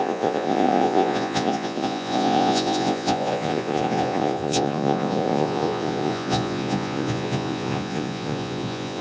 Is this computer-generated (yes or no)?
yes